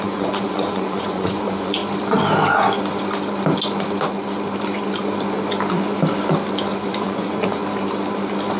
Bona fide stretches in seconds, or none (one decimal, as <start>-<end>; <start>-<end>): 1.8-6.9; 7.6-8.6